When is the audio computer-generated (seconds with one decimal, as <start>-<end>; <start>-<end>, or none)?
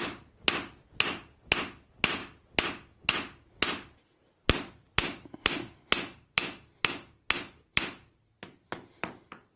7.7-9.6